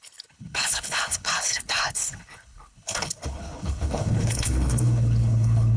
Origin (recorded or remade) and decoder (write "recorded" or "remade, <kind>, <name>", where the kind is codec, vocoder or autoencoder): remade, codec, HILCodec